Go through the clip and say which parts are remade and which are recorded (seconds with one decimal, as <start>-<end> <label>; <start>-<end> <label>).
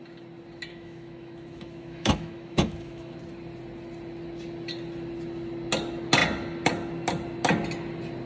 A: 0.0-0.7 recorded; 0.7-3.2 remade; 3.2-8.3 recorded